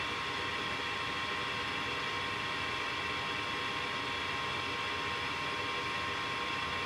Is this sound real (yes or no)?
yes